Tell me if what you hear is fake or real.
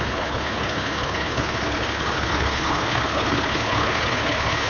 fake